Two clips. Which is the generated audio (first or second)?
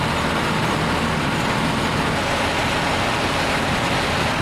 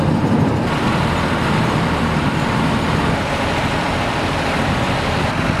second